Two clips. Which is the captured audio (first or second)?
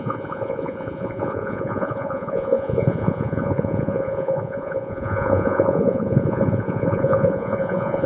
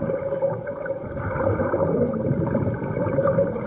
second